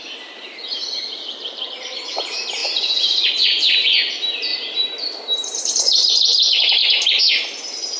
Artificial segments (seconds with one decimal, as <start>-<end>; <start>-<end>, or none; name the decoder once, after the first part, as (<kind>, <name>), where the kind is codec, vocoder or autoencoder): 0.0-6.8 (vocoder, BigVGAN v2); 7.3-8.0